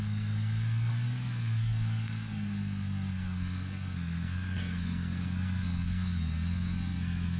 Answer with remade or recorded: remade